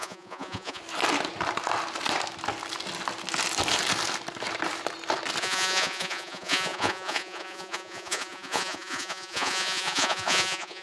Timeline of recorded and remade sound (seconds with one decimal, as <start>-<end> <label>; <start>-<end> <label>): 0.0-0.8 remade; 0.8-5.4 recorded; 5.4-10.8 remade